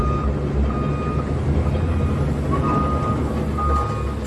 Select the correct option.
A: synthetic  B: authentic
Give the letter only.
B